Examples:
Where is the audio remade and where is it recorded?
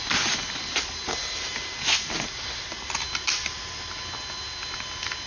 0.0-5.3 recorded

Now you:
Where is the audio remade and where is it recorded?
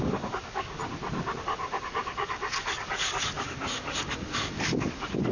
0.0-0.8 remade; 0.8-1.4 recorded; 1.4-5.3 remade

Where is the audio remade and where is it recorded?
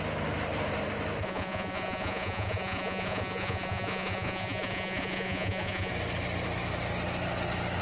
0.0-1.2 recorded; 1.2-5.9 remade; 5.9-7.8 recorded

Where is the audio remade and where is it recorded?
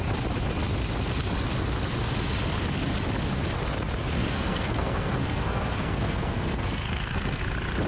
0.0-4.2 recorded; 4.2-7.4 remade; 7.4-7.9 recorded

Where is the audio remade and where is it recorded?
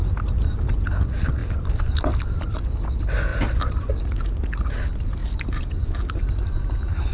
0.0-1.4 recorded; 1.4-2.5 remade; 2.5-3.3 recorded; 3.3-3.9 remade; 3.9-7.1 recorded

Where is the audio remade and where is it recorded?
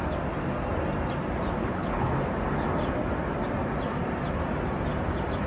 0.0-1.6 recorded; 1.6-2.1 remade; 2.1-5.5 recorded